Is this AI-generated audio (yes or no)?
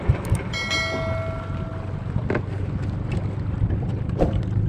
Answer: no